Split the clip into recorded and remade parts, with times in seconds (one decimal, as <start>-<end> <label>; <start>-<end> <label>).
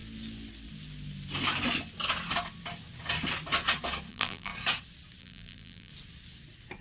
0.0-4.1 recorded; 4.1-4.5 remade; 4.5-5.2 recorded; 5.2-5.9 remade; 5.9-6.8 recorded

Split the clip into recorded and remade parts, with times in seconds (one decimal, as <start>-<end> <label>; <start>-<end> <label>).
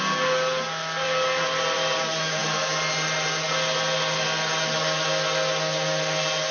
0.0-6.5 recorded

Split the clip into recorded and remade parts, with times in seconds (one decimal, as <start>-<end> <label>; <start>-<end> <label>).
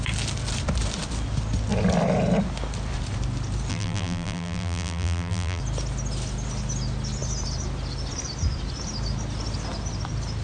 0.0-3.7 recorded; 3.7-5.6 remade; 5.6-10.4 recorded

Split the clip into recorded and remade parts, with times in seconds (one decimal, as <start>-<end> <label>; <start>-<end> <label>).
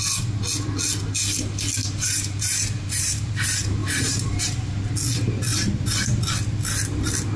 0.0-1.8 recorded; 1.8-3.3 remade; 3.3-3.8 recorded; 3.8-4.7 remade; 4.7-5.5 recorded; 5.5-6.2 remade; 6.2-7.4 recorded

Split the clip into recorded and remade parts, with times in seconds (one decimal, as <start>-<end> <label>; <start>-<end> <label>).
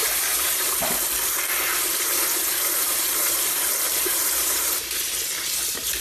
0.0-0.8 remade; 0.8-1.7 recorded; 1.7-5.1 remade; 5.1-6.0 recorded